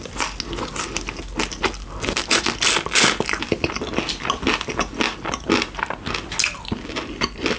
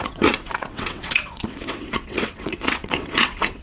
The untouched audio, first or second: first